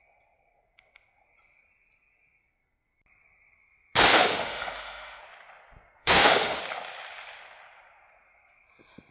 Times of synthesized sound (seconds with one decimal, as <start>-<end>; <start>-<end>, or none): 4.1-5.2; 6.0-6.6